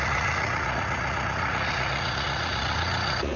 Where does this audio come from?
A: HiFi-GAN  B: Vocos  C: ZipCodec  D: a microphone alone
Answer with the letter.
B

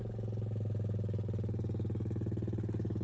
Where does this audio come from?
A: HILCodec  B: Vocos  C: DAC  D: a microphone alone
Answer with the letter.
D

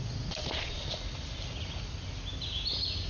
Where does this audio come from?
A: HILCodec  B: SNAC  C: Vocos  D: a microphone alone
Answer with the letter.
D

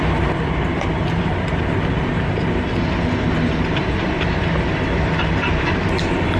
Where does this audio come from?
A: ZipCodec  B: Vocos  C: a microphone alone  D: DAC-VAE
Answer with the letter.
C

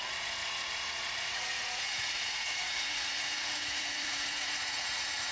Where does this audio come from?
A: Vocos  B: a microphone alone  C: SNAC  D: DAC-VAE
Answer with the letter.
A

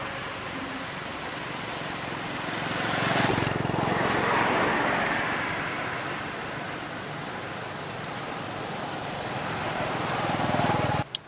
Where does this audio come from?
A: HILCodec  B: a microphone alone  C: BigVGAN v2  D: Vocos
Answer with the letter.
B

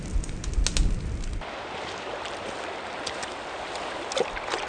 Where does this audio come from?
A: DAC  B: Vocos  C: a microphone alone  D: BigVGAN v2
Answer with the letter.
C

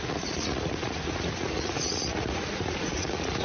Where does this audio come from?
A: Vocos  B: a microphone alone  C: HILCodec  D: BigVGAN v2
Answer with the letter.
A